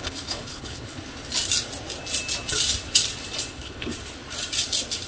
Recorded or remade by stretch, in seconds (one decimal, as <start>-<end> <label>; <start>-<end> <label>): 0.0-1.0 remade; 1.0-3.5 recorded; 3.5-3.9 remade; 3.9-5.1 recorded